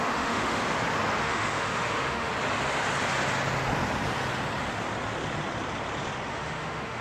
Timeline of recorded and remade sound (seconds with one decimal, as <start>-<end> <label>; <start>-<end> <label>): 0.0-0.6 remade; 0.6-1.2 recorded; 1.2-2.3 remade; 2.3-6.3 recorded; 6.3-7.0 remade